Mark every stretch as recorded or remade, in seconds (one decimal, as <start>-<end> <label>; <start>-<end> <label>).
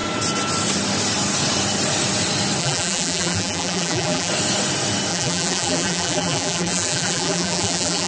0.0-2.6 recorded; 2.6-4.3 remade; 4.3-5.1 recorded; 5.1-8.1 remade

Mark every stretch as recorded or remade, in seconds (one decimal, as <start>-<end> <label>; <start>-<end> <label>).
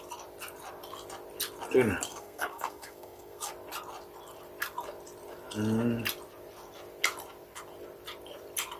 0.0-2.1 recorded; 2.1-3.5 remade; 3.5-8.8 recorded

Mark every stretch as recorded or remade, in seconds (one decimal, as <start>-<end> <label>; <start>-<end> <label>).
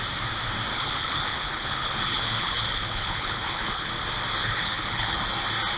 0.0-0.7 recorded; 0.7-3.9 remade; 3.9-4.4 recorded; 4.4-5.2 remade; 5.2-5.8 recorded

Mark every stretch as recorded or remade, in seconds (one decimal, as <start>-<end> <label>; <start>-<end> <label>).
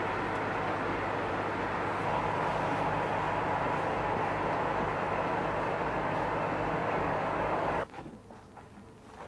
0.0-6.8 recorded; 6.8-8.1 remade; 8.1-9.3 recorded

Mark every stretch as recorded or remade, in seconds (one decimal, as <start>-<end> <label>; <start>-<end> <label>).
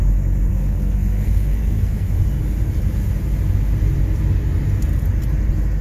0.0-0.5 recorded; 0.5-2.1 remade; 2.1-5.8 recorded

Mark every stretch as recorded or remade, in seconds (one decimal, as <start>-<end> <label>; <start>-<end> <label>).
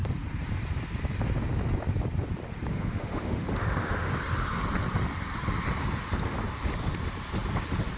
0.0-2.7 recorded; 2.7-4.1 remade; 4.1-8.0 recorded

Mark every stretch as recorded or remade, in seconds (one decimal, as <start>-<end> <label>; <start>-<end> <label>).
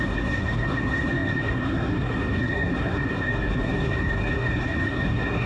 0.0-5.5 remade